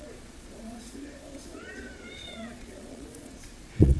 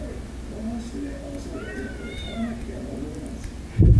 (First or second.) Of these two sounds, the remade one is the first